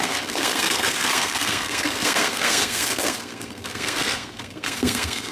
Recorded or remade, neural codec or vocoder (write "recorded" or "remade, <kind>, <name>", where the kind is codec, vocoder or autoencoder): remade, codec, SNAC